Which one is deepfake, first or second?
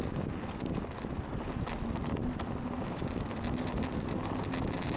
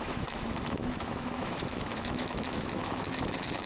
second